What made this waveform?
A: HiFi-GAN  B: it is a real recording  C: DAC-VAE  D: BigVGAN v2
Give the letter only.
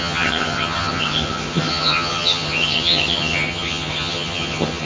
A